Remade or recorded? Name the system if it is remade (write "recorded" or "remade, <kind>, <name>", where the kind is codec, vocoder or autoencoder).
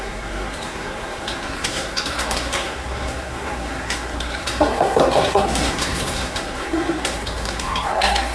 remade, codec, SNAC